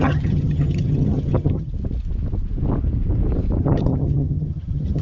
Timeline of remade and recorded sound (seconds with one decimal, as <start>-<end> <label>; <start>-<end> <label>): 0.0-1.7 remade; 1.7-3.6 recorded; 3.6-5.0 remade